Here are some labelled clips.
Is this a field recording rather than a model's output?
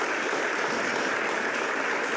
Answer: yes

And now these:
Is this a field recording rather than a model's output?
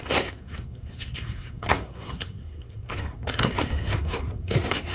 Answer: no